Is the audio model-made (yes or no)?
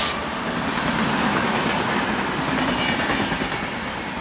yes